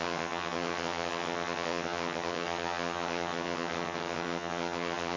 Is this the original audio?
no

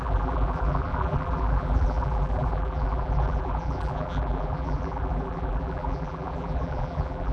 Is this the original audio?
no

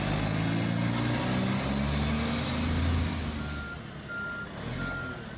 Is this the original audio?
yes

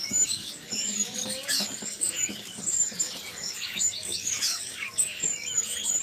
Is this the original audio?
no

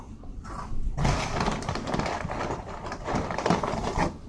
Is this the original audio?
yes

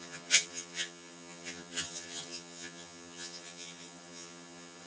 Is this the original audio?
no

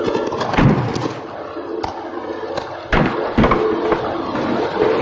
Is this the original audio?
yes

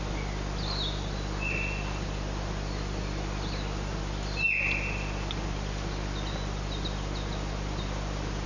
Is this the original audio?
yes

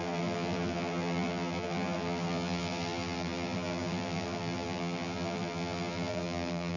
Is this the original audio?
no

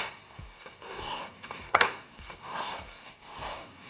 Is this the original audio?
no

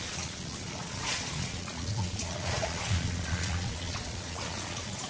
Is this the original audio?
no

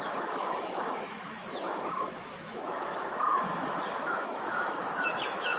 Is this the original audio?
no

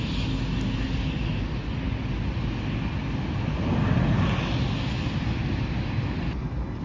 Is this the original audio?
yes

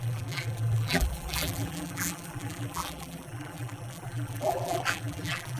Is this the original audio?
no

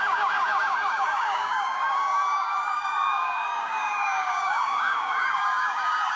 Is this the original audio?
no